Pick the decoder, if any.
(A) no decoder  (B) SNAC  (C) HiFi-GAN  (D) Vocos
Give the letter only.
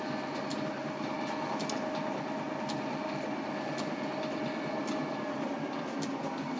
A